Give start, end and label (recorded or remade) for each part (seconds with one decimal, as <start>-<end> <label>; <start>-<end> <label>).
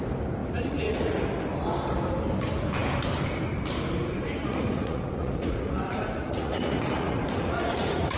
0.0-0.4 recorded; 0.4-1.2 remade; 1.2-4.1 recorded; 4.1-8.2 remade